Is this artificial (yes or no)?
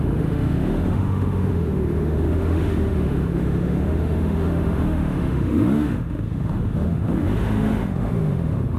yes